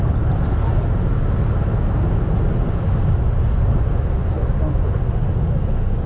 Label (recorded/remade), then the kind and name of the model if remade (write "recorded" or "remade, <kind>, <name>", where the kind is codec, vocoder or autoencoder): recorded